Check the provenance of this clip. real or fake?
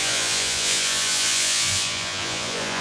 fake